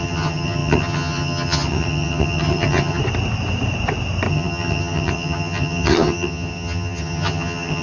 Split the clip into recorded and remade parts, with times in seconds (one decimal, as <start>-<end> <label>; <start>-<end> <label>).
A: 0.0-3.0 remade; 3.0-4.3 recorded; 4.3-7.8 remade